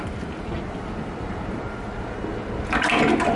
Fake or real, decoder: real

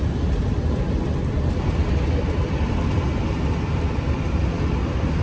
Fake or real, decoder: real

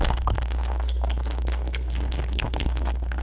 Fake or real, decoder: fake, codec, SNAC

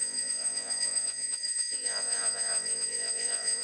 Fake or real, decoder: fake, vocoder, Vocos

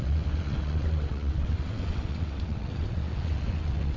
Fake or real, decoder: fake, vocoder, WaveNeXt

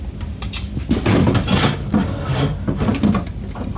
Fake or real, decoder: real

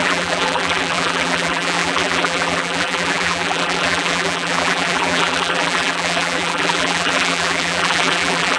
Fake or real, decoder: fake, vocoder, BigVGAN v2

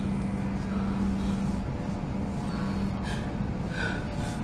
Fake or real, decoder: real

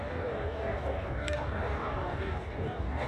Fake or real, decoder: fake, codec, DAC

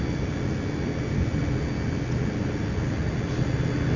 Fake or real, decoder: real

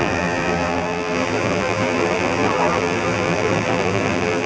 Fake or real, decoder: fake, vocoder, BigVGAN v2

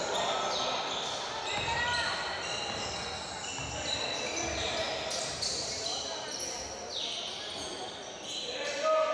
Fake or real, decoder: real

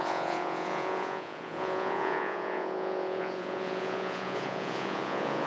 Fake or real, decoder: fake, vocoder, Vocos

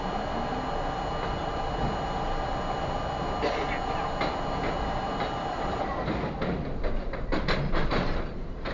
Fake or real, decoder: real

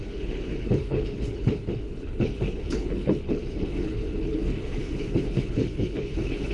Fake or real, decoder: fake, codec, HILCodec